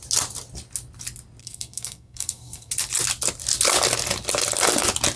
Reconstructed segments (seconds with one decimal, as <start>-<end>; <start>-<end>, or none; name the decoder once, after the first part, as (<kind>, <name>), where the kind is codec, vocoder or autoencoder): 1.4-2.7 (codec, SNAC)